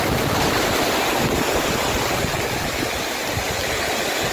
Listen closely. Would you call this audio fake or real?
real